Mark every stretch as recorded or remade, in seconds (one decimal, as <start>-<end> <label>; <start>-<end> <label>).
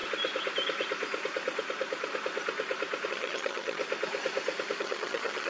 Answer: 0.0-3.1 recorded; 3.1-3.8 remade; 3.8-4.8 recorded; 4.8-5.5 remade